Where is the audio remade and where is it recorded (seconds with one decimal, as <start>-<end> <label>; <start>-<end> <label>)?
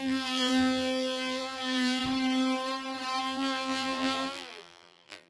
0.0-2.0 remade; 2.0-3.2 recorded; 3.2-5.3 remade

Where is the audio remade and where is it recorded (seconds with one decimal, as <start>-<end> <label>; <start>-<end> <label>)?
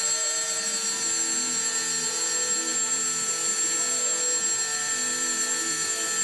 0.0-6.2 recorded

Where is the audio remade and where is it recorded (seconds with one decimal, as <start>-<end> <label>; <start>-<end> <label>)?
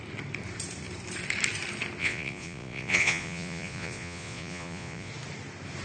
0.0-2.0 recorded; 2.0-5.1 remade; 5.1-5.8 recorded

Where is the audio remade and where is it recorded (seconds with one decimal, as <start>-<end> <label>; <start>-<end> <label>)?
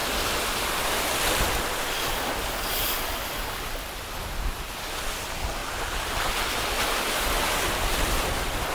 0.0-8.7 recorded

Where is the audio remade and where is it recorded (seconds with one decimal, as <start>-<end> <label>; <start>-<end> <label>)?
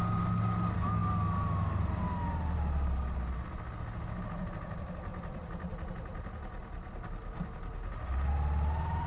0.0-5.1 recorded; 5.1-5.9 remade; 5.9-6.6 recorded; 6.6-7.3 remade; 7.3-9.1 recorded